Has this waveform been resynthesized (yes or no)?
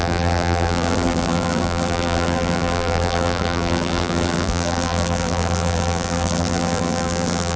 yes